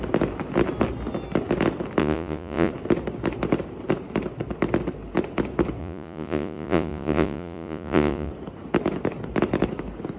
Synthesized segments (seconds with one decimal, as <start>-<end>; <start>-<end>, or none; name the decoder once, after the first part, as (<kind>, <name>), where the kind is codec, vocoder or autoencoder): 2.0-2.7 (vocoder, Vocos); 5.8-8.3